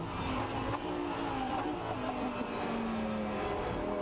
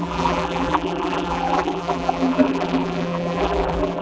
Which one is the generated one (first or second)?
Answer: second